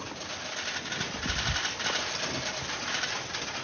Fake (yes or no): no